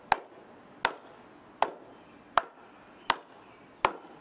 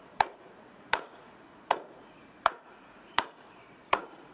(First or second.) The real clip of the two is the first